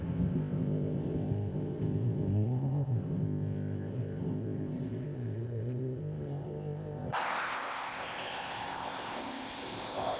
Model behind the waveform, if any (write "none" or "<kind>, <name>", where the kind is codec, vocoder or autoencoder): codec, ZipCodec